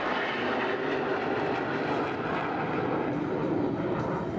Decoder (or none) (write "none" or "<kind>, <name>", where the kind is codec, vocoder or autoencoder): none